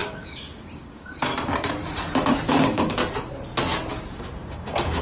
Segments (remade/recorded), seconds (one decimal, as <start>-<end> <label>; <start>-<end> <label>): 0.0-1.3 remade; 1.3-2.5 recorded; 2.5-3.0 remade; 3.0-3.9 recorded; 3.9-5.0 remade